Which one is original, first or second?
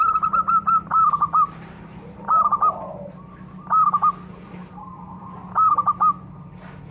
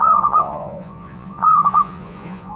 first